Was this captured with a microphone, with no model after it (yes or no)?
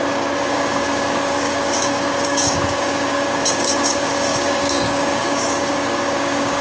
no